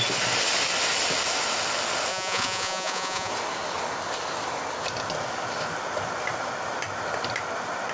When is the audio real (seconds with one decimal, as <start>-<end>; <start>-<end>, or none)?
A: 0.0-2.1; 3.3-7.9